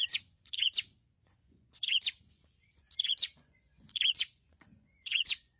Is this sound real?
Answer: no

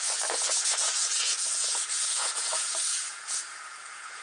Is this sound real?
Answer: no